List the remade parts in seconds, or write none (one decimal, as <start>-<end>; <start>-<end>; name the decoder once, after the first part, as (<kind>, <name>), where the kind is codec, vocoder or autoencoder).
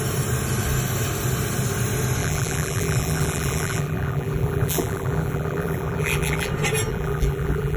2.2-6.5 (vocoder, BigVGAN v2); 6.9-7.8